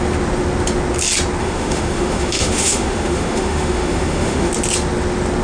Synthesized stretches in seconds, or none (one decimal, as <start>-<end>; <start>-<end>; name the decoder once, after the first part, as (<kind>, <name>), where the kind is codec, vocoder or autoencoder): 1.4-4.5 (autoencoder, DAC-VAE)